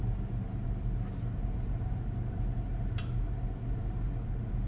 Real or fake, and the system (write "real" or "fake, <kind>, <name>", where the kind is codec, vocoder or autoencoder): real